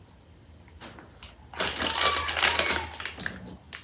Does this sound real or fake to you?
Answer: real